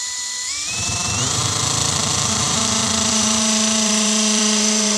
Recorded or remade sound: remade